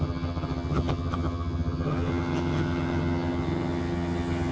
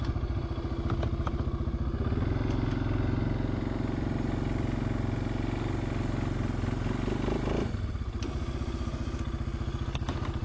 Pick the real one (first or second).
second